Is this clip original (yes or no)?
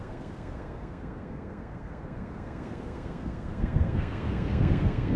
no